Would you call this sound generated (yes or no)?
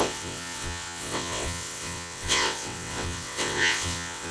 yes